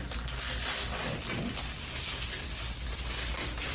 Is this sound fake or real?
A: real